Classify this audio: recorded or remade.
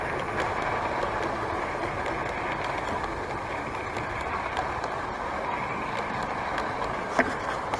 recorded